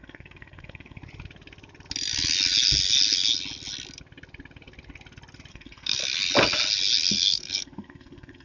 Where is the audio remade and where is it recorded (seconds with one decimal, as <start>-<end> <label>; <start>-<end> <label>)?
0.0-1.0 remade; 1.0-5.5 recorded; 5.5-6.0 remade; 6.0-7.1 recorded; 7.1-8.4 remade